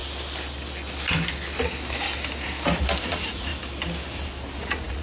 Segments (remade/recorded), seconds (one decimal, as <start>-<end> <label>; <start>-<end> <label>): 0.0-3.0 recorded; 3.0-3.5 remade; 3.5-4.6 recorded; 4.6-5.0 remade